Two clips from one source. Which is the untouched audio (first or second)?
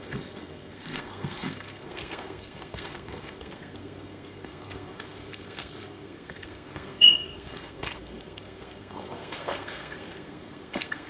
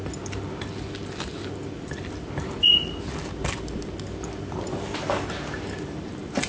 second